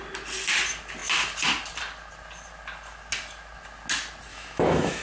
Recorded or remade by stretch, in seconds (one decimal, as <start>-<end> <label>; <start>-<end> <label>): 0.0-4.3 recorded; 4.3-5.0 remade